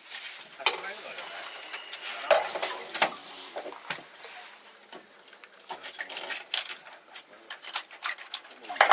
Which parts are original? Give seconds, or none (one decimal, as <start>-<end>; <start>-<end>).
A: 0.0-3.2; 4.3-8.9